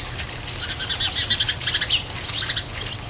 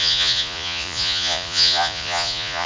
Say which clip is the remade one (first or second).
second